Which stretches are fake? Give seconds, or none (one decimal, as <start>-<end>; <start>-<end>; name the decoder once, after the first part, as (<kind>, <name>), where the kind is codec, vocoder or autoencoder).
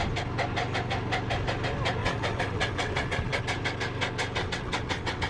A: 2.0-3.4 (vocoder, WaveNeXt); 4.4-5.3